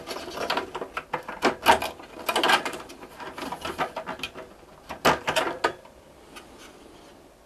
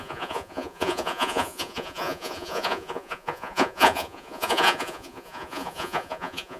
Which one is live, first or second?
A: first